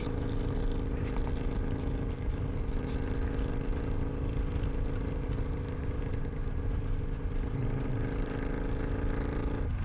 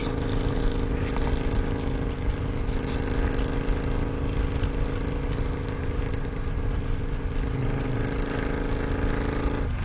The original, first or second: second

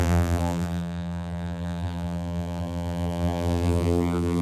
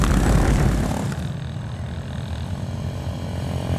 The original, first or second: second